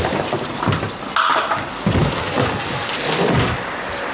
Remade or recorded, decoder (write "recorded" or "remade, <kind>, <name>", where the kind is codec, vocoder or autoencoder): recorded